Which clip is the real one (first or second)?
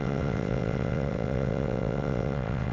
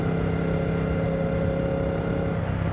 second